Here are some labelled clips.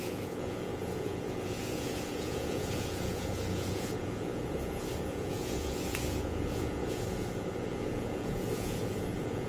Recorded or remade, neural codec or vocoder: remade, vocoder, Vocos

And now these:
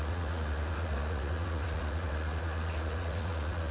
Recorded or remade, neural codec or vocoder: remade, vocoder, Vocos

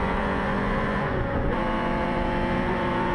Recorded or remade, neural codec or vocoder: remade, vocoder, Vocos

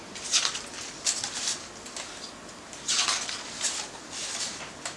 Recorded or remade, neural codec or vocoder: recorded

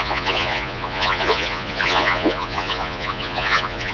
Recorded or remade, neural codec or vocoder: remade, vocoder, Vocos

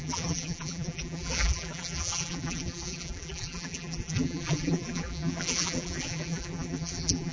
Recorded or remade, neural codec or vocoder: remade, vocoder, BigVGAN v2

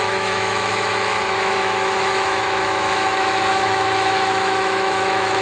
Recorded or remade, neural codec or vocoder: remade, autoencoder, DAC-VAE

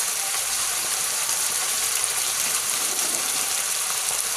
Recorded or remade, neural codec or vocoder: remade, vocoder, BigVGAN v2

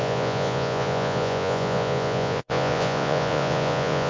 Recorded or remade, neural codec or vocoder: remade, vocoder, Vocos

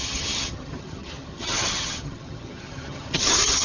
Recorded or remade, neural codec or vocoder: remade, vocoder, HiFi-GAN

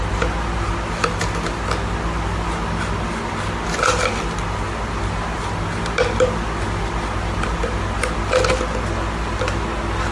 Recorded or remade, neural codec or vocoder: recorded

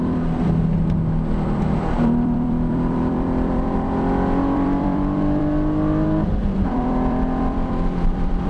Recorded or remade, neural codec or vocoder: remade, vocoder, BigVGAN v2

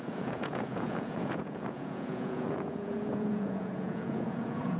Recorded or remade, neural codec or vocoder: remade, vocoder, Vocos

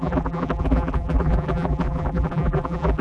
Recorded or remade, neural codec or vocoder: remade, vocoder, BigVGAN v2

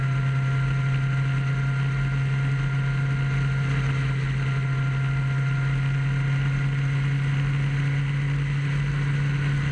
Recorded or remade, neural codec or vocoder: recorded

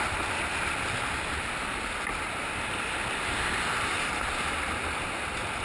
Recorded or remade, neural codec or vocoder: recorded